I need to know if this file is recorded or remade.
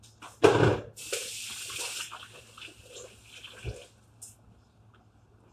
recorded